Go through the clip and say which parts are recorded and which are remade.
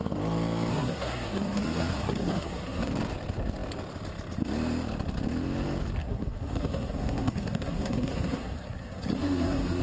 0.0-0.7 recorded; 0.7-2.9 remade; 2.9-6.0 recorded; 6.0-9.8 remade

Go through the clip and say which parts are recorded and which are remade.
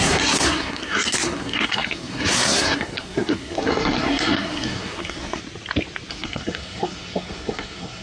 0.0-5.4 remade; 5.4-6.1 recorded; 6.1-8.0 remade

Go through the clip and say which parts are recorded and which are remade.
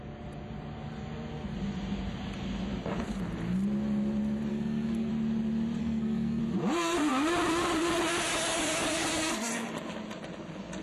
0.0-4.5 recorded; 4.5-5.1 remade; 5.1-5.8 recorded; 5.8-6.4 remade; 6.4-10.8 recorded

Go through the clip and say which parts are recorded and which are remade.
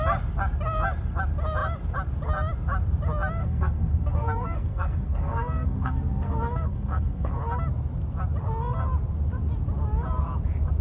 0.0-3.4 recorded; 3.4-7.4 remade; 7.4-10.8 recorded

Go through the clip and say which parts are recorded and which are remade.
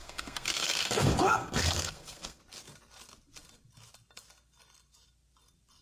0.0-2.4 remade; 2.4-5.8 recorded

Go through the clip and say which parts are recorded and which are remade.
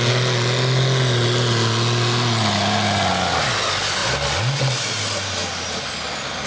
0.0-6.5 recorded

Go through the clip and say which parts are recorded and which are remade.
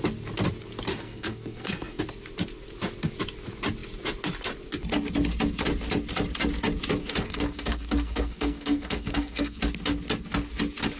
0.0-0.9 recorded; 0.9-2.0 remade; 2.0-7.0 recorded; 7.0-9.6 remade; 9.6-11.0 recorded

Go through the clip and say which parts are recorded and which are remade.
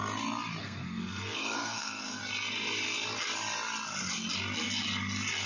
0.0-0.6 recorded; 0.6-2.2 remade; 2.2-5.5 recorded